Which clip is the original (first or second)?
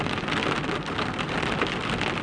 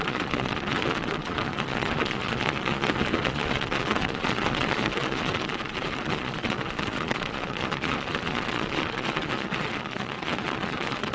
first